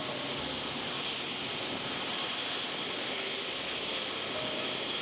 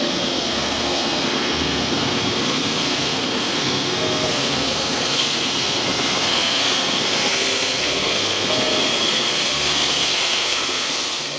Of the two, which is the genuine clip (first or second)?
first